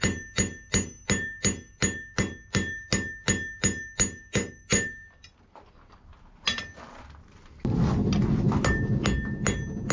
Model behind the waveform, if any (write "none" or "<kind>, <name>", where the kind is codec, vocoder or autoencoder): none